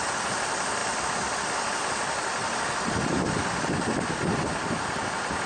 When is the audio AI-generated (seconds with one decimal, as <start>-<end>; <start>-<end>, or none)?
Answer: 0.8-4.1